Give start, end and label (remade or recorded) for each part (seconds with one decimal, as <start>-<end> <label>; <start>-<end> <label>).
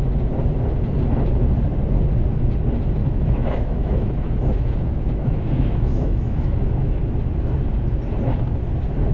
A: 0.0-3.0 recorded; 3.0-7.0 remade; 7.0-9.1 recorded